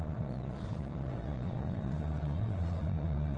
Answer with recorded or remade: remade